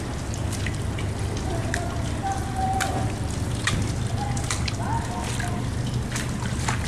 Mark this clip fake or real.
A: real